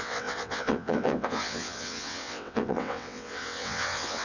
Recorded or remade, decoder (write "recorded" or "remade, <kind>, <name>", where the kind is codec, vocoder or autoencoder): remade, vocoder, WaveNeXt